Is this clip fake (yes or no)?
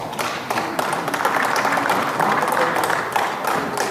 no